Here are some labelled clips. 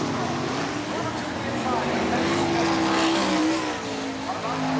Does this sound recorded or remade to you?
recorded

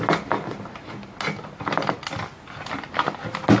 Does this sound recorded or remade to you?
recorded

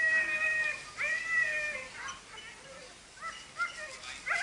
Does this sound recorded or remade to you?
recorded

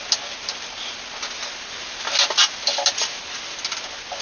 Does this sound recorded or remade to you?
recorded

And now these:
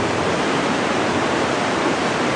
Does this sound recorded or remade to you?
remade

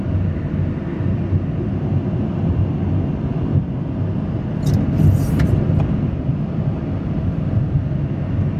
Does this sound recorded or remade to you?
recorded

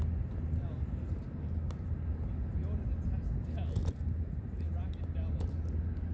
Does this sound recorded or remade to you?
recorded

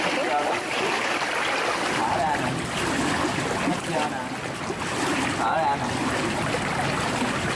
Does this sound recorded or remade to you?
recorded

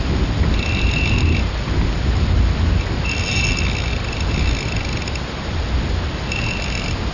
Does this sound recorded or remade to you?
recorded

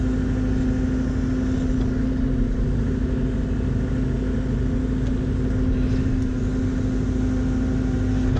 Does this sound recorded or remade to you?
recorded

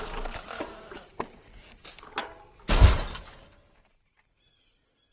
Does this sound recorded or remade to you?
recorded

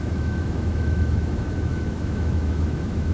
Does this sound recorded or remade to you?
remade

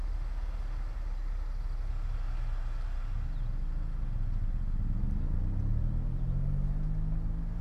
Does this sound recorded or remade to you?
recorded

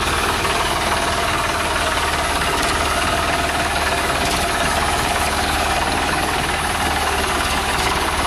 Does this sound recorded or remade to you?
remade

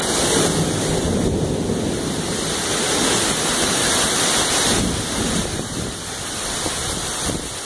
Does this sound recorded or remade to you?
recorded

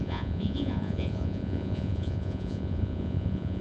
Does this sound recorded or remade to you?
remade